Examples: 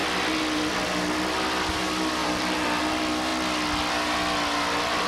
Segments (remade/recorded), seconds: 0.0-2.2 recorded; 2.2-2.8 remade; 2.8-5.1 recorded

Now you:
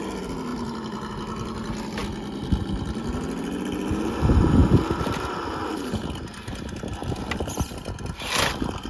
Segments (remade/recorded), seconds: 0.0-8.9 recorded

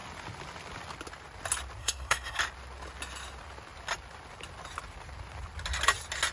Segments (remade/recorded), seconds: 0.0-1.8 recorded; 1.8-2.4 remade; 2.4-6.3 recorded

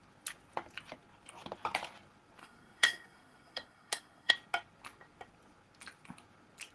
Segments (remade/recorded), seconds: 0.0-2.4 recorded; 2.4-4.3 remade; 4.3-6.7 recorded

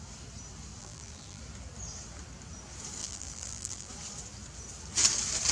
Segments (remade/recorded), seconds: 0.0-0.8 recorded; 0.8-1.4 remade; 1.4-3.0 recorded; 3.0-3.9 remade; 3.9-5.5 recorded